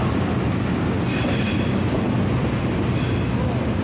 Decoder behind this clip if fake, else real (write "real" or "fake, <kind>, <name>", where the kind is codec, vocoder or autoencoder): real